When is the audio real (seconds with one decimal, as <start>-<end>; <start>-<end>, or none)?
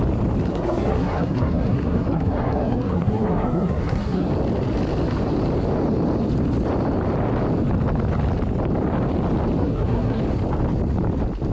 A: 0.0-0.5; 4.3-9.6; 10.2-11.5